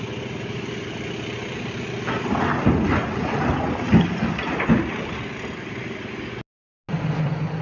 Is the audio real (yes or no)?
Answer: yes